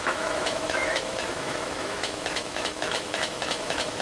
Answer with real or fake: fake